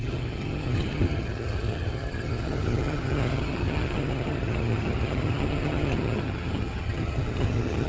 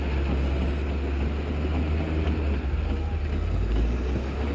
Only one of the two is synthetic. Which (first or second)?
first